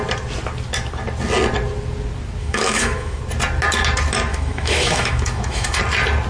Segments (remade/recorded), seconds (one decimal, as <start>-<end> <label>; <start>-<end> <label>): 0.0-2.4 recorded; 2.4-3.2 remade; 3.2-4.3 recorded; 4.3-5.8 remade; 5.8-6.3 recorded